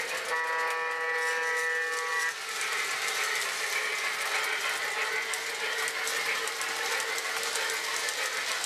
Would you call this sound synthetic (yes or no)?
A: no